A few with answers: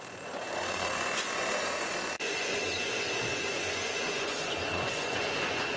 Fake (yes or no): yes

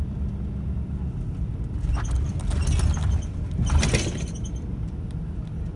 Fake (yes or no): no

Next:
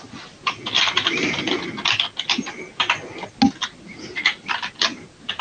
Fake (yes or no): no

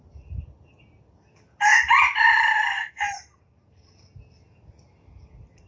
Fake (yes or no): no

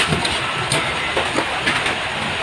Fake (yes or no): no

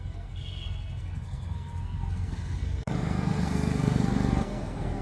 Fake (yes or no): yes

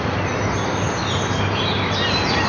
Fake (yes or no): no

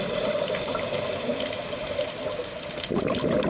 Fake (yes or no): no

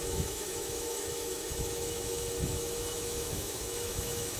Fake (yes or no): yes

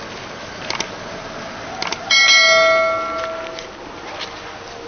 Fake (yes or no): no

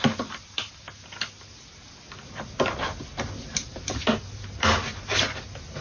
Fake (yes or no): no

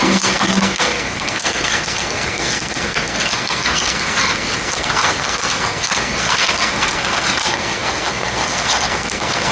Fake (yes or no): yes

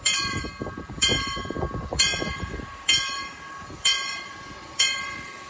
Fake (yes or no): yes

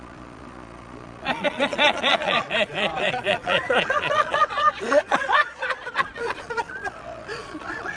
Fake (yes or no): yes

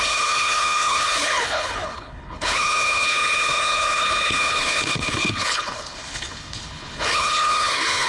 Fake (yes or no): yes